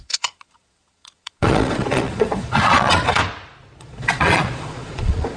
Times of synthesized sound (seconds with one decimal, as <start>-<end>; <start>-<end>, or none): 0.0-3.2; 3.8-5.4